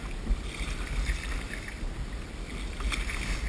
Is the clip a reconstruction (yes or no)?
no